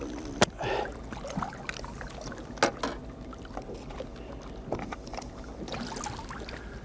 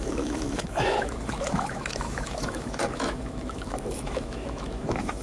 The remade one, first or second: second